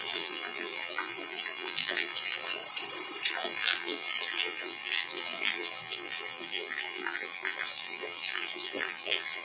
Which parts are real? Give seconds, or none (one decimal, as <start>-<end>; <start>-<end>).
2.6-3.3